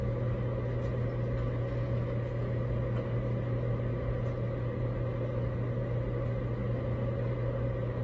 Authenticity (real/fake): real